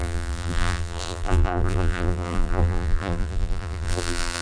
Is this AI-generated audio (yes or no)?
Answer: yes